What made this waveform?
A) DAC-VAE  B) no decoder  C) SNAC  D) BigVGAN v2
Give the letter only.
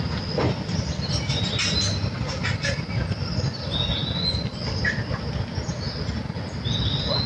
B